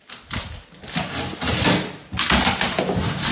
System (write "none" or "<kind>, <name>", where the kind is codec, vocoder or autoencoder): none